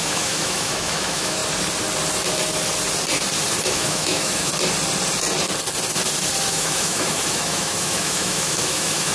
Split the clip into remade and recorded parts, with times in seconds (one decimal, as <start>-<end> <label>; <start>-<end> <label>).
0.0-1.4 remade; 1.4-3.7 recorded; 3.7-4.5 remade; 4.5-6.5 recorded; 6.5-9.1 remade